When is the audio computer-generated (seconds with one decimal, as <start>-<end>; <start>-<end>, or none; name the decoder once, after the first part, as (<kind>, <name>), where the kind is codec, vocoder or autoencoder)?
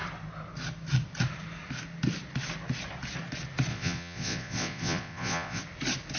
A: 3.7-5.6 (vocoder, Vocos)